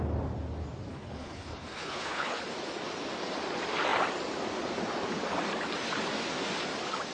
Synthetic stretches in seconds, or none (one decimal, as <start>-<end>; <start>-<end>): 0.9-2.4